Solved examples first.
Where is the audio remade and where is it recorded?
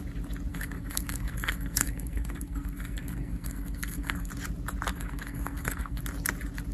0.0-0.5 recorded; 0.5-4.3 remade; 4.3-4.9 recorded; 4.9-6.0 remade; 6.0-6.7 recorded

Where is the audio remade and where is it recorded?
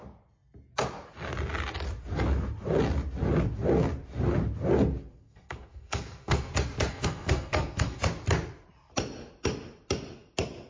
0.0-5.2 recorded; 5.2-6.5 remade; 6.5-6.9 recorded; 6.9-8.0 remade; 8.0-10.7 recorded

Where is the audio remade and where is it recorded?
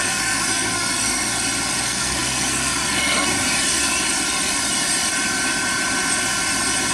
0.0-1.3 remade; 1.3-1.8 recorded; 1.8-3.3 remade; 3.3-6.9 recorded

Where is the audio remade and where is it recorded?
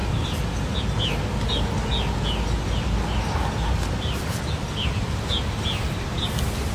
0.0-6.7 recorded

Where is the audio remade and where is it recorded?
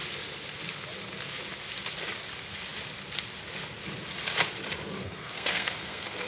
0.0-5.0 recorded; 5.0-6.3 remade